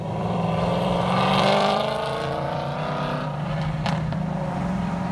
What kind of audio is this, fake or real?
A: fake